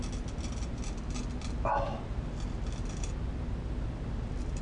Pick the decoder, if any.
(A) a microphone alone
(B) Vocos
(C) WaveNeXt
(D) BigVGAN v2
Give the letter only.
A